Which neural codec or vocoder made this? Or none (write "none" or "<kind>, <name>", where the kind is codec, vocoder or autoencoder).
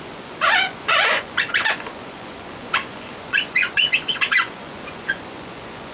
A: vocoder, Vocos